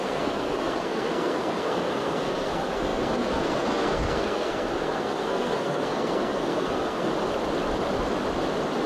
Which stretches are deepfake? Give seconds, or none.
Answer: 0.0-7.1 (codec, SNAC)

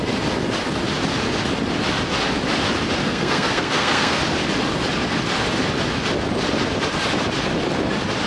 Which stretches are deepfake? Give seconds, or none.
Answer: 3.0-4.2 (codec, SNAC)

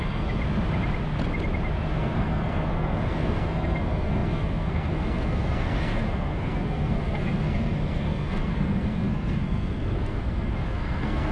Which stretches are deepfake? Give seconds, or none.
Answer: 0.0-0.4 (codec, SNAC); 1.9-11.3

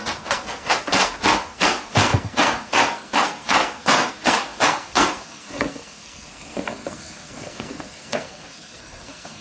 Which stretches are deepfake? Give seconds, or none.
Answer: 0.0-9.4 (codec, SNAC)

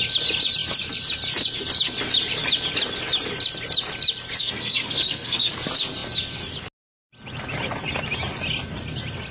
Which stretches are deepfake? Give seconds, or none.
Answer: 4.4-5.5 (codec, SNAC)